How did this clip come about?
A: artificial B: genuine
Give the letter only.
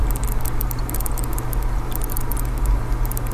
B